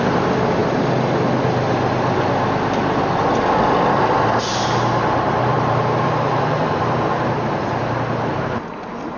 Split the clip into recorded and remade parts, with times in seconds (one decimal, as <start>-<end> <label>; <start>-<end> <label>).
0.0-5.5 recorded; 5.5-7.7 remade; 7.7-9.2 recorded